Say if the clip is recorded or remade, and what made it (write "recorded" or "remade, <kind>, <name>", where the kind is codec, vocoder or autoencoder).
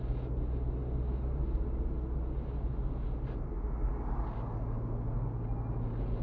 recorded